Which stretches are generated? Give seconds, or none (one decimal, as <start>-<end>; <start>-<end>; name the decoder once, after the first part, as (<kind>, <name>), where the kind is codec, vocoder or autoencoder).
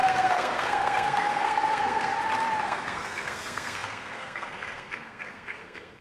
0.0-2.1 (codec, SNAC); 2.6-6.0